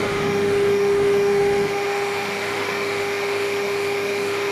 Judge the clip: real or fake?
fake